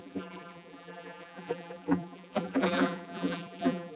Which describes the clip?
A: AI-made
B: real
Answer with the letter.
A